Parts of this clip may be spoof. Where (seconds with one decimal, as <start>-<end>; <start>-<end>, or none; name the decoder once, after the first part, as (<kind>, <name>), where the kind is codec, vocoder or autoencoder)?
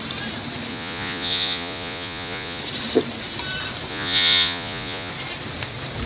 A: 0.7-2.6 (vocoder, Vocos); 3.9-5.1